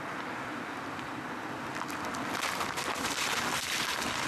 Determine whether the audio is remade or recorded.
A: recorded